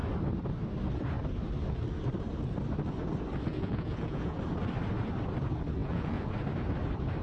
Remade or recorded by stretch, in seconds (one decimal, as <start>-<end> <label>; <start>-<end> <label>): 0.0-3.5 recorded; 3.5-4.4 remade; 4.4-5.8 recorded; 5.8-6.3 remade; 6.3-7.2 recorded